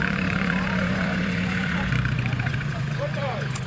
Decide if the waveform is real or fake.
fake